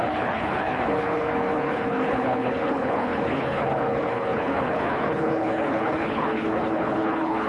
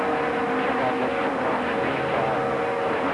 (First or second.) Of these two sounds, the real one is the second